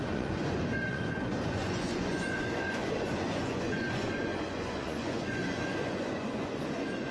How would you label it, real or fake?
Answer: fake